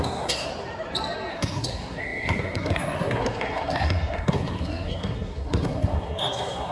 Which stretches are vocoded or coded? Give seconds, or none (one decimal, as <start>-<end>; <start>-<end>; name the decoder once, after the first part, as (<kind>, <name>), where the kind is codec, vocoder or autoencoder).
0.0-0.5 (codec, SNAC); 1.3-6.7